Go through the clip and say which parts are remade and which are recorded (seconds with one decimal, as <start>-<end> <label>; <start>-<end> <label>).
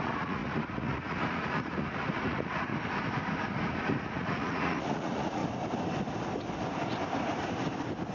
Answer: 0.0-2.7 remade; 2.7-3.5 recorded; 3.5-5.4 remade; 5.4-8.1 recorded